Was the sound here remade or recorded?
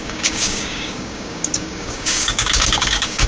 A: remade